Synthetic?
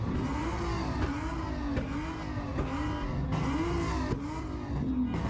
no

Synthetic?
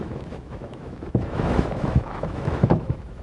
yes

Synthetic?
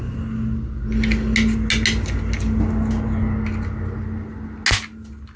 no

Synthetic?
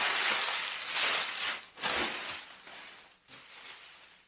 no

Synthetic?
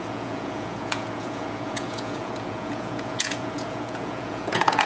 yes